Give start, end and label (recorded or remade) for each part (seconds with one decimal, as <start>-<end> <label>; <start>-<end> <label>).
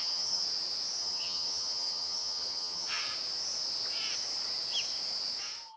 0.0-0.4 remade; 0.4-1.0 recorded; 1.0-3.0 remade; 3.0-5.8 recorded